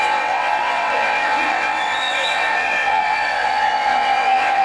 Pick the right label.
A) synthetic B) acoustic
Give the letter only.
A